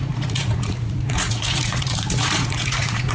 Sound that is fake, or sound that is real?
fake